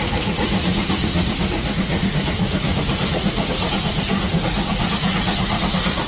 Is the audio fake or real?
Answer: fake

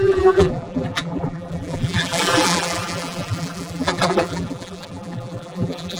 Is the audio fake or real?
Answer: fake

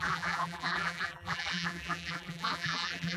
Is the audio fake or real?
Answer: fake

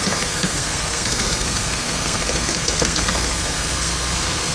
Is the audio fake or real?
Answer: fake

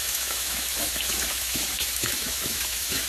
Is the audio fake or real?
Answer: fake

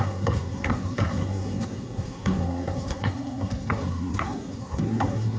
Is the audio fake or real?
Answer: fake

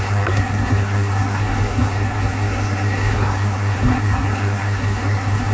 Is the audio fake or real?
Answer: fake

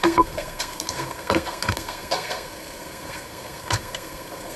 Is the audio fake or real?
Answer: fake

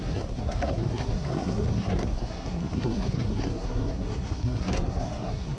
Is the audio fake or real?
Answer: fake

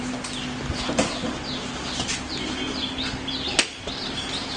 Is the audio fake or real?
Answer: real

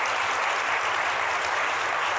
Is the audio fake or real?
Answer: real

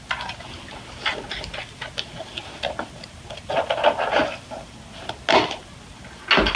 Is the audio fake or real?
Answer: real